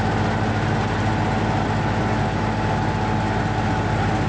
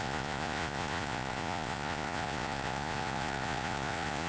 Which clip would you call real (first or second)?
first